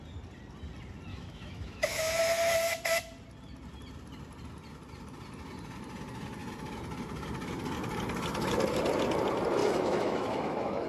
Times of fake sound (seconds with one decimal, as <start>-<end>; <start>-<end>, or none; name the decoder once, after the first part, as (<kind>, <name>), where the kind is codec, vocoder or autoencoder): 1.1-2.2 (autoencoder, DAC-VAE); 9.6-10.9